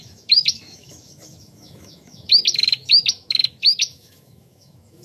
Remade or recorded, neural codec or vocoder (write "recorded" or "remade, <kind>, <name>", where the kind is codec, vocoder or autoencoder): remade, autoencoder, DAC-VAE